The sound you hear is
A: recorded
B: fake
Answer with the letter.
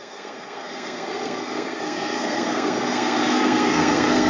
B